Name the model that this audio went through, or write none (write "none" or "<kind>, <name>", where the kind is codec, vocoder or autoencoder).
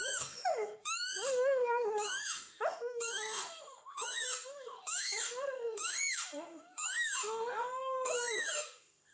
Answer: autoencoder, DAC-VAE